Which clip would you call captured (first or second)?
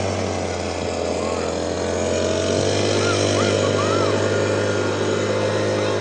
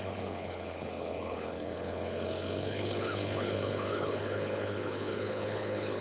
first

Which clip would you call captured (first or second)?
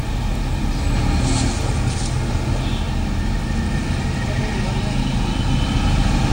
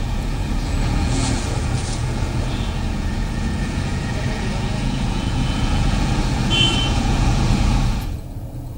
first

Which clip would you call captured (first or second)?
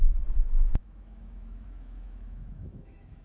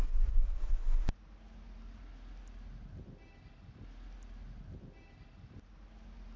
second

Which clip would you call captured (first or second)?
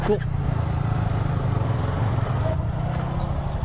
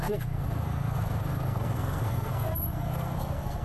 first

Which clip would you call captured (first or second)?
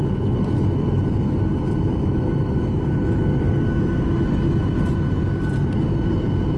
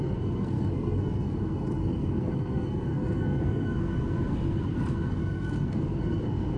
first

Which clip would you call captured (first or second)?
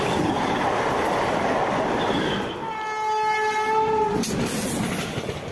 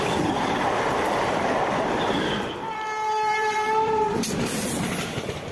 first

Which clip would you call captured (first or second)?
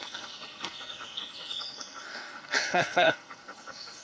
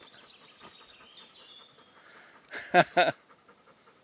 second